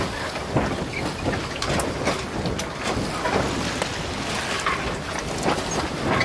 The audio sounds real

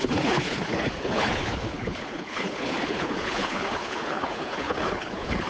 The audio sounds fake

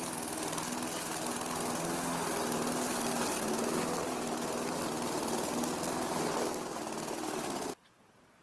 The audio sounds real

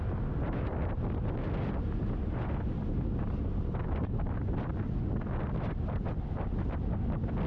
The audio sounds real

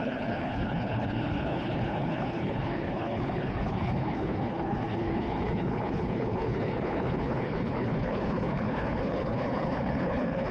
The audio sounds fake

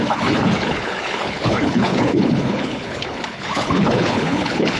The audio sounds fake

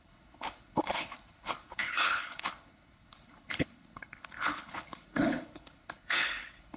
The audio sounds fake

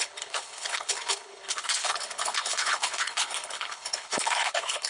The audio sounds fake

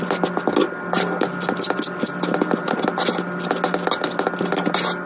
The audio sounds real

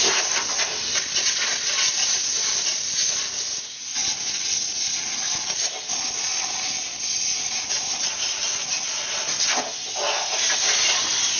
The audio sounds real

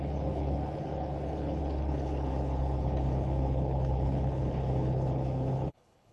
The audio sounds fake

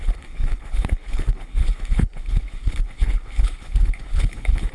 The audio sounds fake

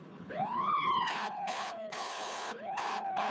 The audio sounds fake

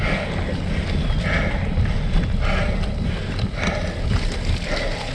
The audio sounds real